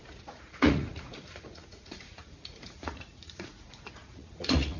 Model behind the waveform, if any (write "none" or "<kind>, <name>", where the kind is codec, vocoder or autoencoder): vocoder, Vocos